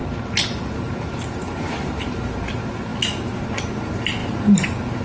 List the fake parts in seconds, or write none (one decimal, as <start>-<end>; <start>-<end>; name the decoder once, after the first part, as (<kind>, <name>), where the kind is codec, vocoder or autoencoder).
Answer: none